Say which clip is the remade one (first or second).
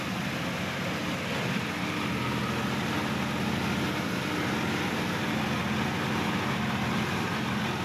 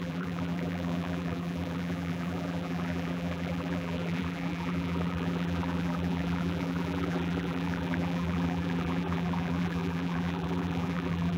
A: second